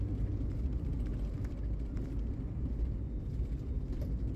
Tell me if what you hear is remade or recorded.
recorded